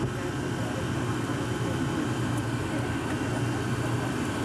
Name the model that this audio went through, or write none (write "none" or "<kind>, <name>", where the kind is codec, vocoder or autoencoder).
none